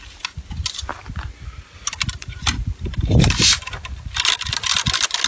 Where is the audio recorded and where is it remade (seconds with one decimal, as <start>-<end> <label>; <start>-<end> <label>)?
0.0-5.3 recorded